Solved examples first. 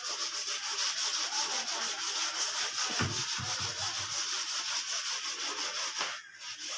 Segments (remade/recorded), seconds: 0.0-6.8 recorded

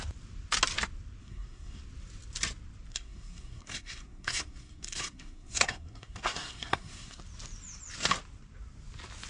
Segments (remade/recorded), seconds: 0.0-1.2 recorded; 1.2-1.8 remade; 1.8-2.9 recorded; 2.9-7.2 remade; 7.2-9.3 recorded

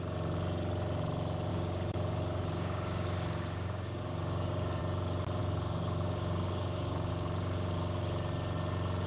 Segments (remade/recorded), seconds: 0.0-1.5 recorded; 1.5-4.8 remade; 4.8-5.4 recorded; 5.4-7.1 remade; 7.1-9.1 recorded